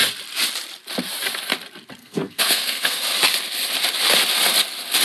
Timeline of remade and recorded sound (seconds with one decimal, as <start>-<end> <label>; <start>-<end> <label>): 0.0-2.0 recorded; 2.0-3.0 remade; 3.0-5.0 recorded